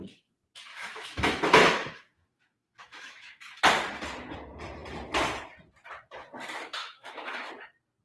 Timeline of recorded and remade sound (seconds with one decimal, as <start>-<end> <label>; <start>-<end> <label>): 0.0-0.7 recorded; 0.7-3.6 remade; 3.6-6.8 recorded; 6.8-7.5 remade; 7.5-8.0 recorded